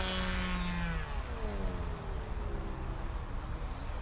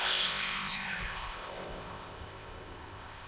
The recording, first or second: first